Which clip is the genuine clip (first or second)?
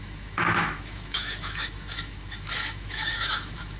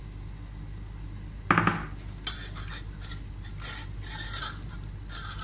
second